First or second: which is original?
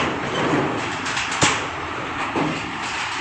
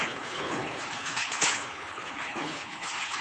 first